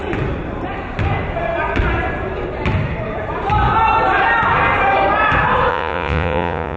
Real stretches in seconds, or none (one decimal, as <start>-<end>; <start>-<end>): 0.0-5.7

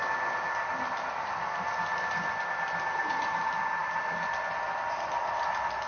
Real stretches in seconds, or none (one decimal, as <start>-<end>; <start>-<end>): 0.0-5.9

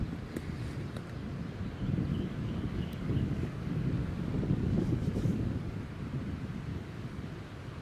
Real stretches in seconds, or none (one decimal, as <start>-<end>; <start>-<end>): 0.0-2.1; 5.8-6.7; 7.3-7.8

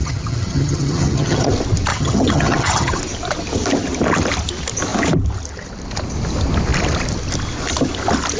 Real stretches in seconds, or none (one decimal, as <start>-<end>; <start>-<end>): 1.5-1.9; 3.0-8.4

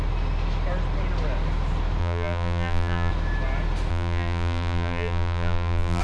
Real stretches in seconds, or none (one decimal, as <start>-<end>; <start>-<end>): 0.0-2.0; 3.1-3.9

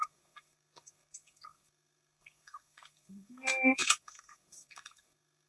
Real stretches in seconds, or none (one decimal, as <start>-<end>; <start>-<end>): none

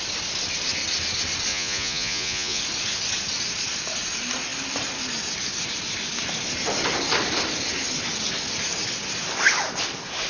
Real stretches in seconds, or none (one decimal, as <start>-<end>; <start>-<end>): 0.0-1.5; 2.6-10.3

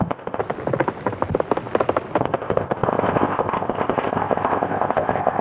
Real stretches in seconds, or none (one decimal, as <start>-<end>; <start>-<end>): 0.4-2.2